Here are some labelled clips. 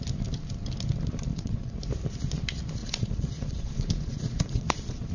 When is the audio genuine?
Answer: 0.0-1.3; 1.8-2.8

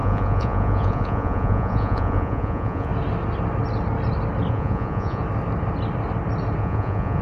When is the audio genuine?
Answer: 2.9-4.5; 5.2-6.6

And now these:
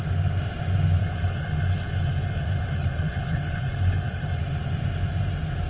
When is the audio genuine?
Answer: 0.0-1.0; 4.4-5.7

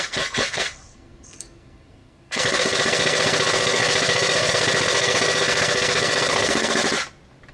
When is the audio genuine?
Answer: 6.8-7.5